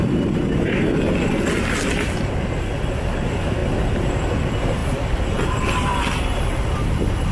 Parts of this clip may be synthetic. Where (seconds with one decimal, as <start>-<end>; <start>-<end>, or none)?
3.6-4.1